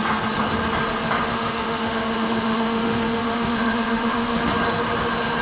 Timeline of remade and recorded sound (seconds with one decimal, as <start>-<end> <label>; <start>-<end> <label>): 0.0-1.3 recorded; 1.3-4.5 remade; 4.5-5.4 recorded